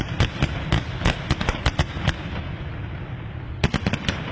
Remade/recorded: recorded